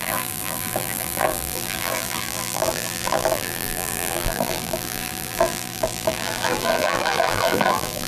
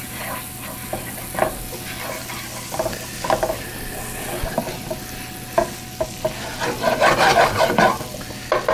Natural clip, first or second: second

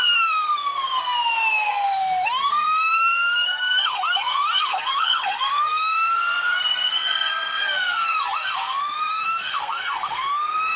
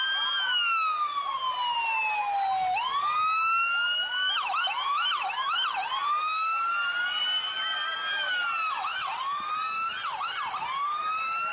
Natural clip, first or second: second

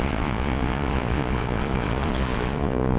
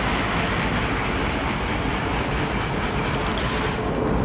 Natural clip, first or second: second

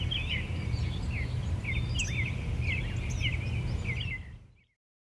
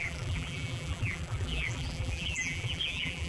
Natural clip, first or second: first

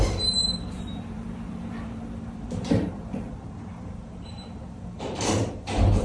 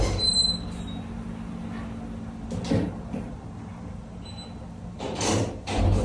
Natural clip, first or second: second